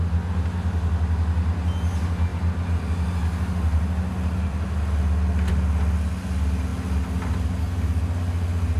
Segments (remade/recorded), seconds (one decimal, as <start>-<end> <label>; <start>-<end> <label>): 0.0-8.8 recorded